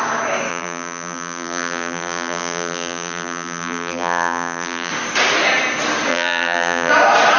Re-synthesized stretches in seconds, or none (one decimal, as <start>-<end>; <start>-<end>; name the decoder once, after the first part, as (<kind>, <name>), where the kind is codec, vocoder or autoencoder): 0.5-4.9 (vocoder, BigVGAN v2); 6.1-6.9